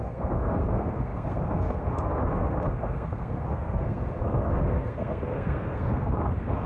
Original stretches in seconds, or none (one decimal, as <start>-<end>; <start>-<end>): none